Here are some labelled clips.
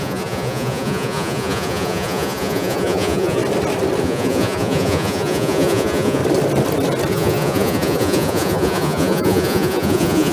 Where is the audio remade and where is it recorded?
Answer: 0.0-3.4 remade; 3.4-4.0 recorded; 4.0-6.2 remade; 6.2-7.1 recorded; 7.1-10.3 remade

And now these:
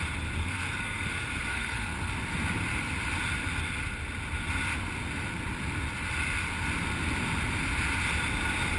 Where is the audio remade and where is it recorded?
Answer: 0.0-0.4 recorded; 0.4-1.1 remade; 1.1-1.5 recorded; 1.5-2.1 remade; 2.1-8.8 recorded